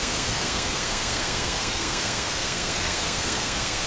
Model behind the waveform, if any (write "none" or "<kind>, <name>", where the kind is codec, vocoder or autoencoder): codec, SNAC